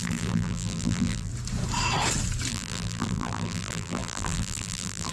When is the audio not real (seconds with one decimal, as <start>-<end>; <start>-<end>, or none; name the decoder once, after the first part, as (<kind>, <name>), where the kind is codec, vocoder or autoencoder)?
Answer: 0.0-1.3 (vocoder, BigVGAN v2); 2.5-5.1